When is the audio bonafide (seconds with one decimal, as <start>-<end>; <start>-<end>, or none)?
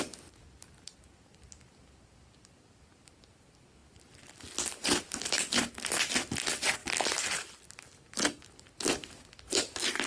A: 0.0-10.1